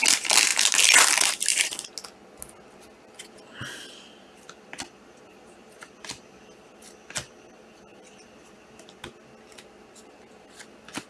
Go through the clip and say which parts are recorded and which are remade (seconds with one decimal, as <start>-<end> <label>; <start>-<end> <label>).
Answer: 0.0-11.1 recorded